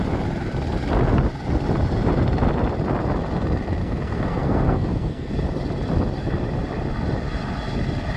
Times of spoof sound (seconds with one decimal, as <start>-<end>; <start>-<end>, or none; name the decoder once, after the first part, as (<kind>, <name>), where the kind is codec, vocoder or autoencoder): 3.8-5.3 (codec, SNAC)